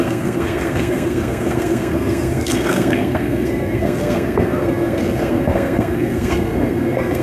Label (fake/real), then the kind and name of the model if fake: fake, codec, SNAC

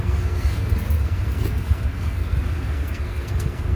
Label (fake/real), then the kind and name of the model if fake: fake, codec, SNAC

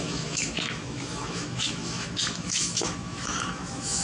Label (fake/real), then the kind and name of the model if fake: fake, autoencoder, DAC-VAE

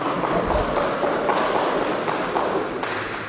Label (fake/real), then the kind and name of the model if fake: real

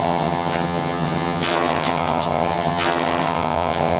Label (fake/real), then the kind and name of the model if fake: fake, vocoder, HiFi-GAN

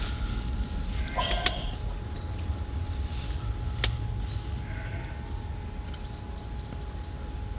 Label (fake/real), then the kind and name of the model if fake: real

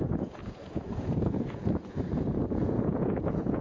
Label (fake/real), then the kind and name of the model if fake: fake, vocoder, Vocos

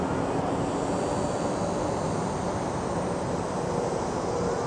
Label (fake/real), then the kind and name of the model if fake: real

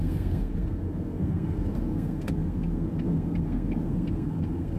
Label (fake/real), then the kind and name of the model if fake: fake, codec, SNAC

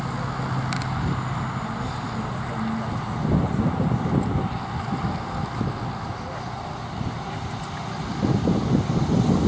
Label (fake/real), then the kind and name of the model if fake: real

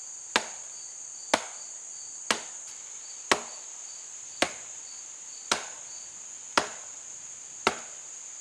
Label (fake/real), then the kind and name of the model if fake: real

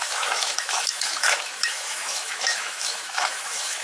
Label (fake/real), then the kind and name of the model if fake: fake, autoencoder, DAC-VAE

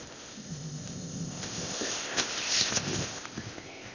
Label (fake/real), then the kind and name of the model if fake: fake, codec, ZipCodec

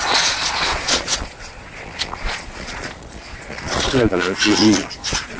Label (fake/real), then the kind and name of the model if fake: fake, vocoder, Vocos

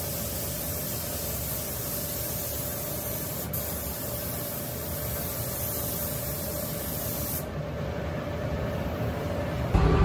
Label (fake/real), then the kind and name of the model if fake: real